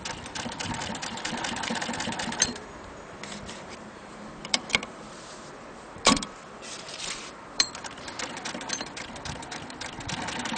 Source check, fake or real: fake